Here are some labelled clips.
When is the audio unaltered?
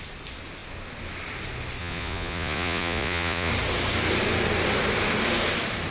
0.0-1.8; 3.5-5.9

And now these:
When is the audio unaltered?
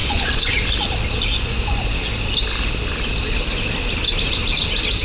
0.5-1.3; 1.9-5.0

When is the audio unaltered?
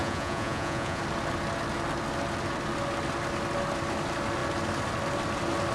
1.0-5.7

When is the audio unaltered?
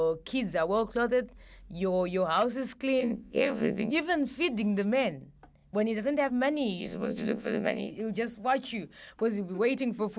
0.0-3.0; 3.9-6.8; 7.9-10.2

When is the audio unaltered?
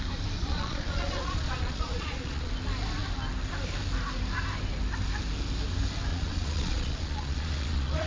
0.0-0.4; 2.5-6.1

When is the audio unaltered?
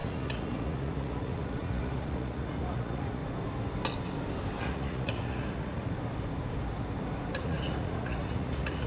3.2-4.6; 5.8-7.4